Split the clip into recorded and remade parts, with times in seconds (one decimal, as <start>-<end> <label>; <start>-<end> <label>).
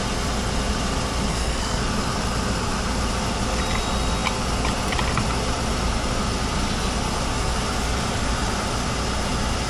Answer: 0.0-1.3 recorded; 1.3-1.8 remade; 1.8-9.7 recorded